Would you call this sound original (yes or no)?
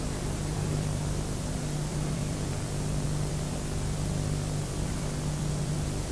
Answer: no